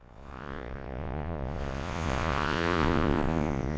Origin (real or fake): fake